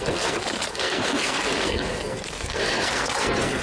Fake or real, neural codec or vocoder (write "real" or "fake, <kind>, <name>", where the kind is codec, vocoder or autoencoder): fake, codec, SNAC